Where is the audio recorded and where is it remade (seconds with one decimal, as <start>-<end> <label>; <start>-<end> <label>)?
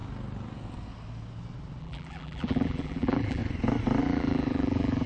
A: 0.0-1.8 recorded; 1.8-3.4 remade; 3.4-4.0 recorded; 4.0-5.1 remade